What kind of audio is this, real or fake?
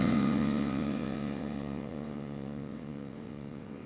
fake